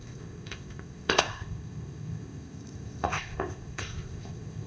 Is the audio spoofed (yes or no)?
yes